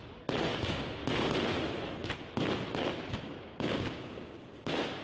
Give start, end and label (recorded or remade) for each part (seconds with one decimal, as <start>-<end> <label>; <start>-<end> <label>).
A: 0.0-0.6 recorded; 0.6-1.0 remade; 1.0-3.1 recorded; 3.1-5.0 remade